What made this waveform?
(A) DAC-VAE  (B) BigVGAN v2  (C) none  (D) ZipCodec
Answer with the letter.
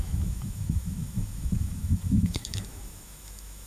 A